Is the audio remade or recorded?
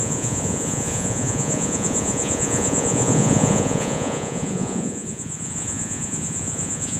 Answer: remade